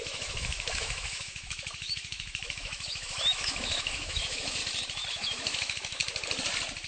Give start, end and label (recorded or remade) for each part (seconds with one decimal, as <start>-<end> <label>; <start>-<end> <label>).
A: 0.0-4.6 remade; 4.6-5.1 recorded; 5.1-6.0 remade; 6.0-6.9 recorded